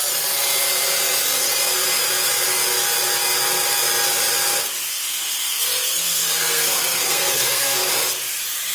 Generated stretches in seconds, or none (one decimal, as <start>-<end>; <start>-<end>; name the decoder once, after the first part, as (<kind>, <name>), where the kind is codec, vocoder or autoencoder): 4.9-7.9 (codec, SNAC)